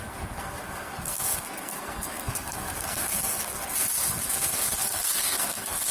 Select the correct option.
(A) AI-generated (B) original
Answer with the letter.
A